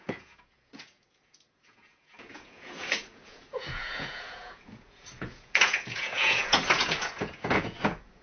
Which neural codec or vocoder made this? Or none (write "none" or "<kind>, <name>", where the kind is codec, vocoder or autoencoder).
vocoder, Vocos